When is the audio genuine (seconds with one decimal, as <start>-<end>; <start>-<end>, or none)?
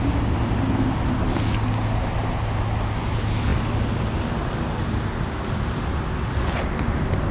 0.0-7.3